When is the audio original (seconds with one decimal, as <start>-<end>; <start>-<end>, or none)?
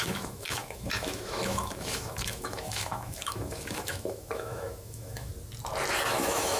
5.3-6.1